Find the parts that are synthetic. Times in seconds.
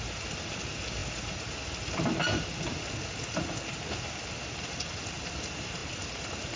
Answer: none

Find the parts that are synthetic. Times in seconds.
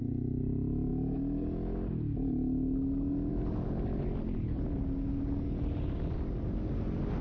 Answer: none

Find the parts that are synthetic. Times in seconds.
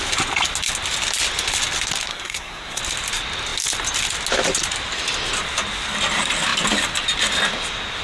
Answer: 2.1-2.8 (codec, SNAC)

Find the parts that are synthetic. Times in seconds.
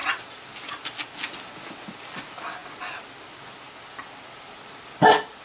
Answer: none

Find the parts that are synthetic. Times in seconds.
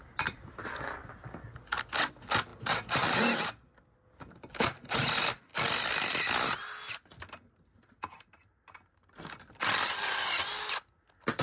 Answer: none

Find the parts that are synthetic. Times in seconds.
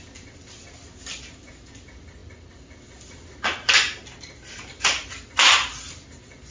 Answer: none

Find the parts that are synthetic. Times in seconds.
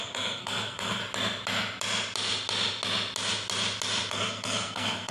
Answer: 0.0-1.0 (codec, SNAC); 4.1-5.1